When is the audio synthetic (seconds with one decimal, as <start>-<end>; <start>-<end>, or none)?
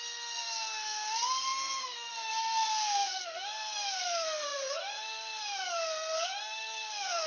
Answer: 0.0-7.3